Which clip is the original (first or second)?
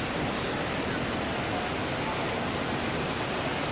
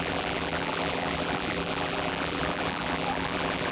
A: first